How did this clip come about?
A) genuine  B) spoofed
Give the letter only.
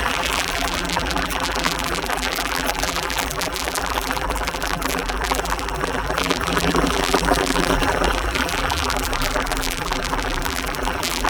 B